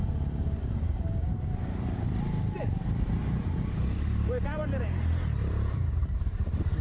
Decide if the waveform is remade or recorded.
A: remade